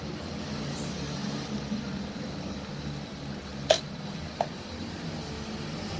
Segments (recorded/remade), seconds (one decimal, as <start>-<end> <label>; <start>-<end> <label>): 0.0-3.5 recorded; 3.5-4.2 remade; 4.2-6.0 recorded